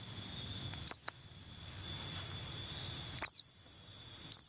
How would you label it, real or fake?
real